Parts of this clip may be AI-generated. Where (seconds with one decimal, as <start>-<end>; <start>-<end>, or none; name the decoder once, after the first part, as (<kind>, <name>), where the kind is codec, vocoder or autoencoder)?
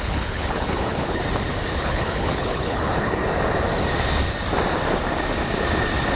0.0-1.2 (codec, HILCodec); 1.8-3.2